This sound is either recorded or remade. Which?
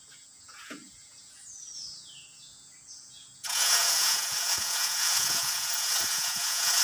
remade